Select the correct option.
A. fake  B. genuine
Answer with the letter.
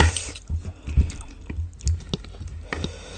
B